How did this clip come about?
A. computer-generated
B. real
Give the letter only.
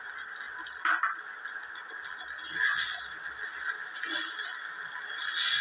B